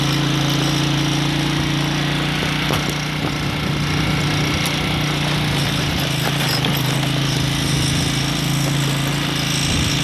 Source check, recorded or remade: recorded